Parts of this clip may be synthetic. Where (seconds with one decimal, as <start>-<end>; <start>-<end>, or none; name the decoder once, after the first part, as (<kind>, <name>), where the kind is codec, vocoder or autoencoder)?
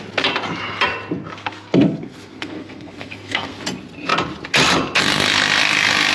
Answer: 1.3-3.6 (codec, SNAC)